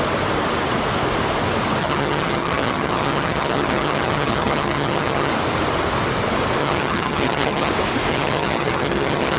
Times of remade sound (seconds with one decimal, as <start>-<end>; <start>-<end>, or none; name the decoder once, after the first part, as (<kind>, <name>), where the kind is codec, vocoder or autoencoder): 1.8-5.3 (vocoder, HiFi-GAN); 6.6-7.7; 8.1-9.4